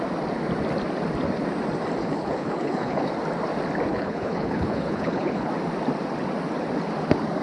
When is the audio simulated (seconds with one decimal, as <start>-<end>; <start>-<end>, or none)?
2.0-3.1; 3.9-5.5